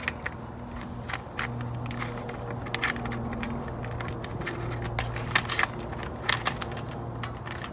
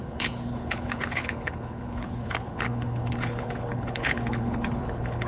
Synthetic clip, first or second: second